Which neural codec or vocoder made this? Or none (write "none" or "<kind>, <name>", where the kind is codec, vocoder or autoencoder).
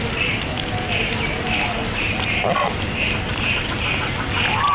none